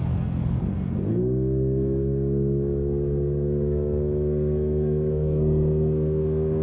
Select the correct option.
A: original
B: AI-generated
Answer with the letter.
B